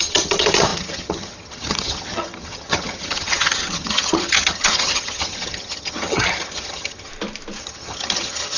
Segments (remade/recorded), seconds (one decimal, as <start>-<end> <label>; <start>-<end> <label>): 0.0-7.1 remade; 7.1-7.6 recorded; 7.6-8.6 remade